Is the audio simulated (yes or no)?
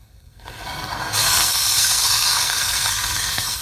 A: yes